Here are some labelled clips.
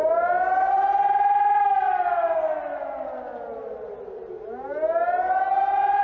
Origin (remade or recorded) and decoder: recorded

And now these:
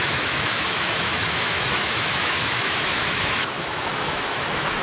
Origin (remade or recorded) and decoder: remade, autoencoder, DAC-VAE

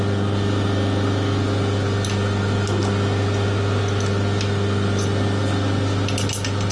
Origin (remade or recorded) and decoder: recorded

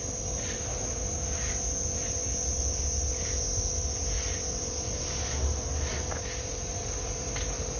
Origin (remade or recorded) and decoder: recorded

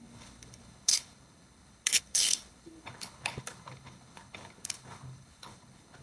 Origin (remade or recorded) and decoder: remade, codec, HILCodec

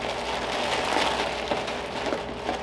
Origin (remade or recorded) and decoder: recorded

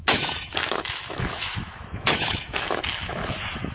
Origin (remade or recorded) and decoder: remade, autoencoder, DAC-VAE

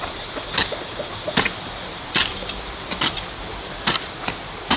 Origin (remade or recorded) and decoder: recorded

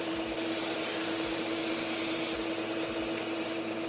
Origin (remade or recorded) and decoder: recorded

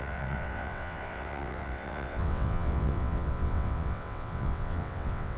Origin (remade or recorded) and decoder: remade, vocoder, WaveNeXt